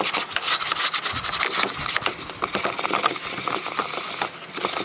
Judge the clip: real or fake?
real